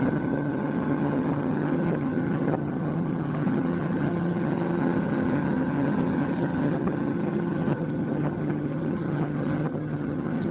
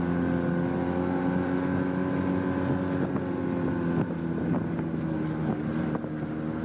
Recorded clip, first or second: second